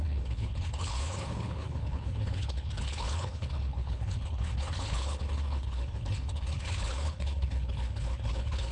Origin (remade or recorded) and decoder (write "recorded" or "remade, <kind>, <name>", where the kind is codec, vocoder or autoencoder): remade, codec, HILCodec